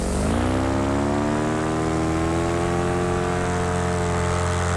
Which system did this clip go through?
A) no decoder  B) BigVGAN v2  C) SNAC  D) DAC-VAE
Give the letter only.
A